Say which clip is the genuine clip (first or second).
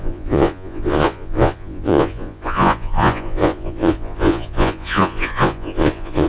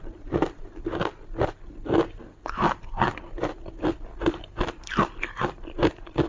second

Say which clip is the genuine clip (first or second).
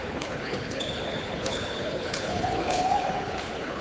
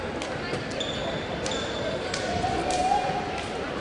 second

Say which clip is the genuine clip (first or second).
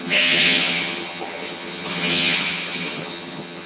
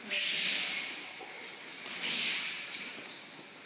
second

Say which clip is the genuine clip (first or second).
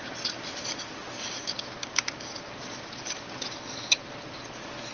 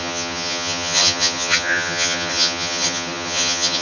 first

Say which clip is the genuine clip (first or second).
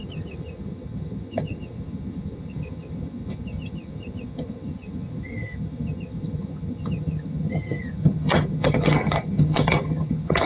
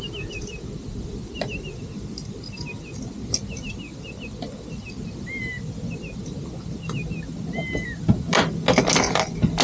second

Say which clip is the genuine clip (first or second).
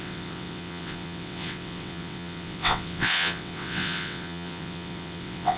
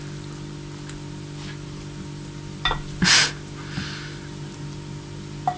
second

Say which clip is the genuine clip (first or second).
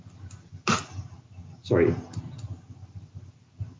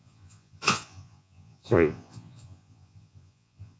first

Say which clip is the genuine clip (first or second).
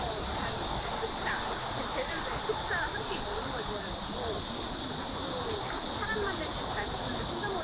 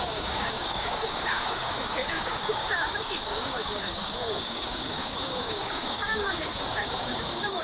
first